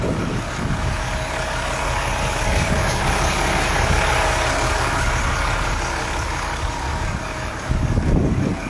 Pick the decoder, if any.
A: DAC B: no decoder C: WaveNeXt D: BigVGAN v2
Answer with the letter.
A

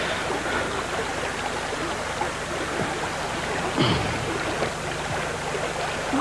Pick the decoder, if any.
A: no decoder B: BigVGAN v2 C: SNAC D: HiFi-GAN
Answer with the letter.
A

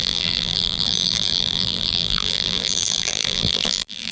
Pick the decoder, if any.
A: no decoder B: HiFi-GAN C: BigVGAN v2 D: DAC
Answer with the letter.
C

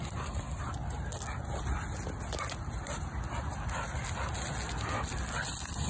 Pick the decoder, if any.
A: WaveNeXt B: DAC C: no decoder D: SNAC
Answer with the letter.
C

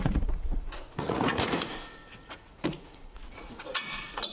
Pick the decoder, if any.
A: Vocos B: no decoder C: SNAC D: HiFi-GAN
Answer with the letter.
A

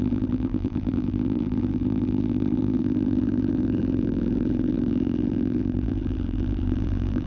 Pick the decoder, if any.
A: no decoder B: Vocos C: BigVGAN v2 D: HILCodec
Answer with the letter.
C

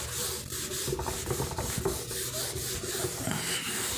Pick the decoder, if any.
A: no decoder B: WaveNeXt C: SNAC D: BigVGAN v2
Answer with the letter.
A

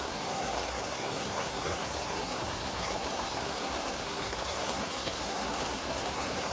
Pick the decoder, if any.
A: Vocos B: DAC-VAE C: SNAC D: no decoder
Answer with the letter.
C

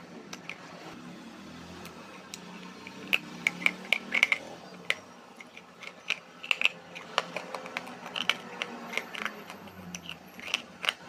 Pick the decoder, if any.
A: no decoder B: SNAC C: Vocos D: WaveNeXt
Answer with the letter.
A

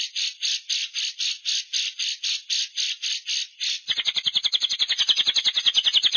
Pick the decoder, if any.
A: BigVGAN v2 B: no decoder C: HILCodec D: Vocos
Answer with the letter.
B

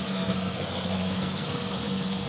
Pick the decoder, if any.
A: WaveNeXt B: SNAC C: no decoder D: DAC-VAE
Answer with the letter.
B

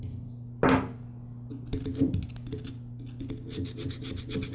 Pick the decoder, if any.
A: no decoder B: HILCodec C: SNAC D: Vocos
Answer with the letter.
A